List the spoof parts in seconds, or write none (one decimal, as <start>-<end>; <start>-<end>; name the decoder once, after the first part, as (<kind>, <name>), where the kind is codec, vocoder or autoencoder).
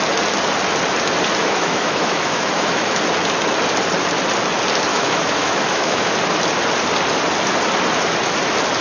1.4-3.0 (autoencoder, DAC-VAE); 4.9-6.1